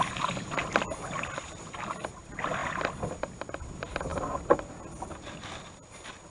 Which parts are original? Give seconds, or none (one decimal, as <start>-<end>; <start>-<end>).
0.0-6.3